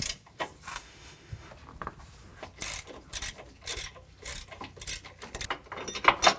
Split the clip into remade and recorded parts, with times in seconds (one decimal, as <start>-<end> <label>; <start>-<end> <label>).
0.0-0.7 recorded; 0.7-1.5 remade; 1.5-6.4 recorded